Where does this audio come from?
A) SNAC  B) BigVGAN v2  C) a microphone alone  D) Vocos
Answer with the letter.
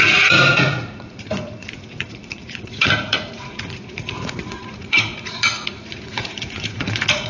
D